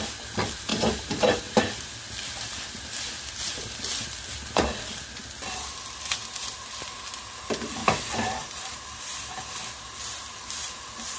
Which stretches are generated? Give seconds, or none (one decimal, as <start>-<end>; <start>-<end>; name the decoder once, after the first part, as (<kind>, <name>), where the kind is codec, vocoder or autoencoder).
0.7-1.6 (vocoder, BigVGAN v2); 7.8-9.0